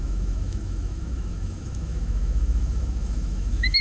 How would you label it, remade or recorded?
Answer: remade